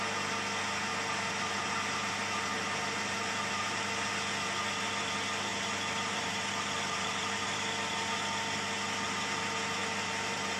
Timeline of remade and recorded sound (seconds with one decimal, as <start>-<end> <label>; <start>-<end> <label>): 0.0-0.9 recorded; 0.9-4.1 remade; 4.1-5.5 recorded; 5.5-7.7 remade; 7.7-9.8 recorded; 9.8-10.6 remade